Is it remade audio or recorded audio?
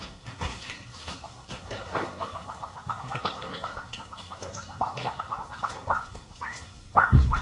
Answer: remade